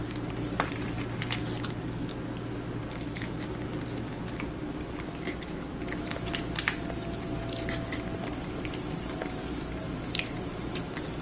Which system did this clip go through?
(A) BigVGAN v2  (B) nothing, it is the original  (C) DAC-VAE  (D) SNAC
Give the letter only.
B